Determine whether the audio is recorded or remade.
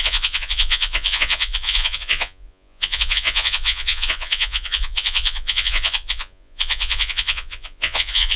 remade